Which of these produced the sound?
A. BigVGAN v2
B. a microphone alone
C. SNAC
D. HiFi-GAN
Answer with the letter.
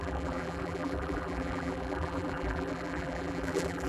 A